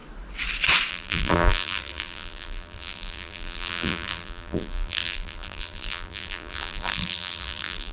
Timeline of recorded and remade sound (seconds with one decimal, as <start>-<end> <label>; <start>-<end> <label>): 0.0-0.9 recorded; 0.9-7.9 remade